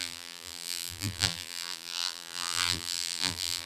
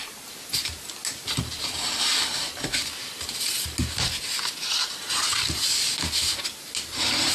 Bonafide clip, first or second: second